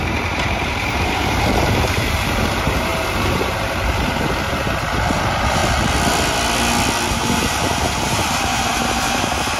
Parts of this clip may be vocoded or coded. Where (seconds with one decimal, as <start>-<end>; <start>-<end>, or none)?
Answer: 0.0-5.6; 7.1-9.6